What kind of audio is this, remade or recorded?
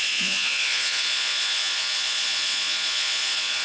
remade